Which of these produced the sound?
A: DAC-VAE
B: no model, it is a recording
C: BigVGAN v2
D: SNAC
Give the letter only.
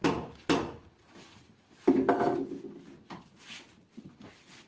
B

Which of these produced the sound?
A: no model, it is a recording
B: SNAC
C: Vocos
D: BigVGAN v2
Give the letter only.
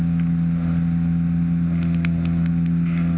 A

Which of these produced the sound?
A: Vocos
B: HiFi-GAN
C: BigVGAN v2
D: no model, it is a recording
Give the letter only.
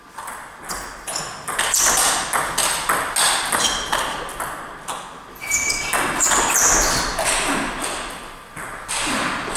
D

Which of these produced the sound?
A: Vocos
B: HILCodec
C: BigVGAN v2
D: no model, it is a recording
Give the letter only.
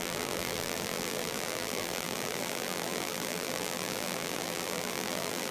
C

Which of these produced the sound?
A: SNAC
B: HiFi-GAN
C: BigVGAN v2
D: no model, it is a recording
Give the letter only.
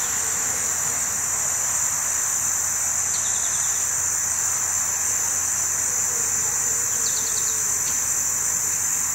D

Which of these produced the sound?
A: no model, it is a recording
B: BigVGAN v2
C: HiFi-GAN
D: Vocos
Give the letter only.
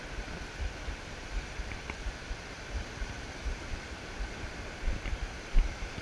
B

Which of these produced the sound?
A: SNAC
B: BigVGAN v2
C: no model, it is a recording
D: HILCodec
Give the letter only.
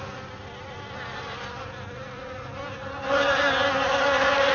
C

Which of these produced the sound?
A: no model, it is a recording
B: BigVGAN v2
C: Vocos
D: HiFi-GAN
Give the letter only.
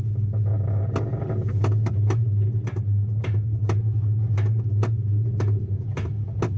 A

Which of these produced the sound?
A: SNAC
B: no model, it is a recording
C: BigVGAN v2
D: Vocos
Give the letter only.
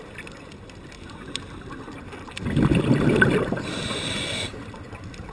B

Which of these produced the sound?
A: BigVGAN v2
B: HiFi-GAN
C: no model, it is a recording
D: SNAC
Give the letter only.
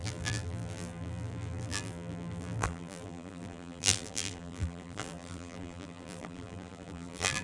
A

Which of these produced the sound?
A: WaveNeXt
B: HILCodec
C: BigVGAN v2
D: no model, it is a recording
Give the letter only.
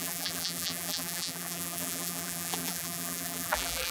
C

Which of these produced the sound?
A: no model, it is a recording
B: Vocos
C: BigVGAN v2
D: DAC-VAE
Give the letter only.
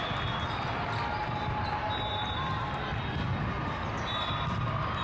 A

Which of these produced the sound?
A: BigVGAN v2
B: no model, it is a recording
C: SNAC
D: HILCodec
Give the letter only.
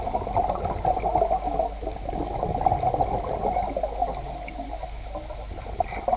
B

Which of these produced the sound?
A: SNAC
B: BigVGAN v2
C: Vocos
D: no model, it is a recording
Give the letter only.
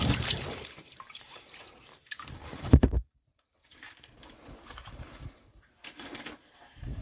B